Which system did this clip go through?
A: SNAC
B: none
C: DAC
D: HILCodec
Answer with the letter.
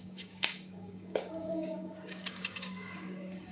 C